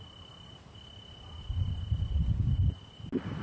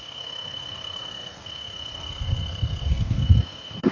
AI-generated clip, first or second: second